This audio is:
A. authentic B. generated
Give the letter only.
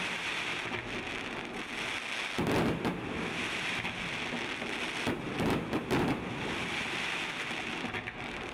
A